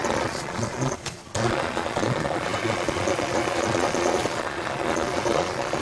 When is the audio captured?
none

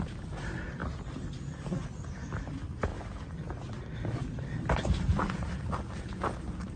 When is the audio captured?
0.0-6.8

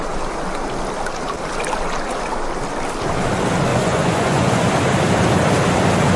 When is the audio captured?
0.0-3.7; 4.7-6.2

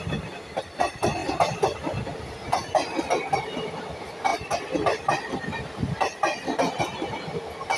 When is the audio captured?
0.0-7.8

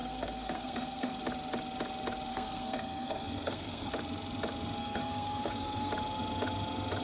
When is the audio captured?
1.2-2.3; 3.9-4.8; 5.9-7.0